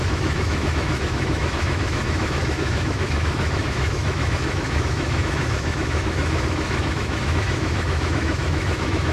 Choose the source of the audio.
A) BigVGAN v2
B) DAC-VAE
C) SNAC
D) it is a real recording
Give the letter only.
B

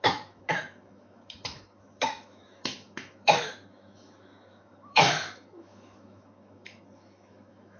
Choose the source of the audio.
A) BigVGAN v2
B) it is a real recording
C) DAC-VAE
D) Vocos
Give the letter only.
C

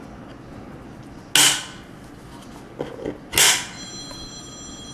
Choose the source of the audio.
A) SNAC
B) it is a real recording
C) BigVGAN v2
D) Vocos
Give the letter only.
B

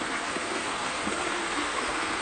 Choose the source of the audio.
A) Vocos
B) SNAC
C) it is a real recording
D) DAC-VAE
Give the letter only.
B